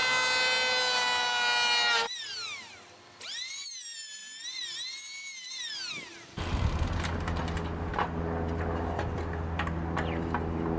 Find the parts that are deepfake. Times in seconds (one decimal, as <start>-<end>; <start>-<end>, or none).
3.1-4.2; 5.9-10.8